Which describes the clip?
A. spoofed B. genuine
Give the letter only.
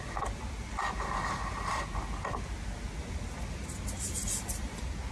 B